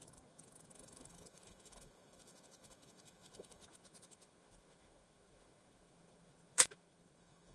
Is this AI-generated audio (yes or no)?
yes